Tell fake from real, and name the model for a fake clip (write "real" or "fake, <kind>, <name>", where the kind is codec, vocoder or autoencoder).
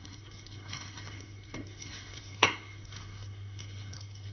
fake, codec, SNAC